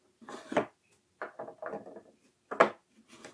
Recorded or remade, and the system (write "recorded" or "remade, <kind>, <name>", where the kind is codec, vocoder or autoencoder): recorded